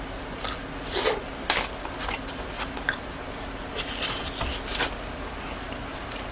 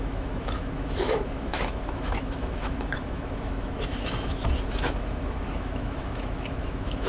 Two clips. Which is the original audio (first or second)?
first